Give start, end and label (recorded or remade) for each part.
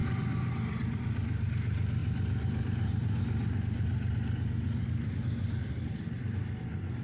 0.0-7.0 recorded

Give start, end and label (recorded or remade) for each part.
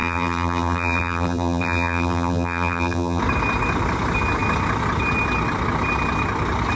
0.0-3.2 remade; 3.2-6.8 recorded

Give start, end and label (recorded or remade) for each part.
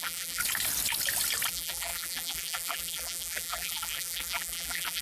0.0-0.4 remade; 0.4-1.5 recorded; 1.5-5.0 remade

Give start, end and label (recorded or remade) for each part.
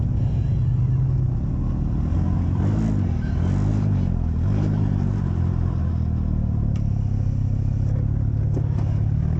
0.0-2.1 recorded; 2.1-2.6 remade; 2.6-3.7 recorded; 3.7-5.9 remade; 5.9-9.4 recorded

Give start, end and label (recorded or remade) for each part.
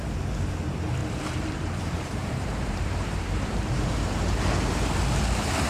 0.0-1.0 recorded; 1.0-4.4 remade; 4.4-5.7 recorded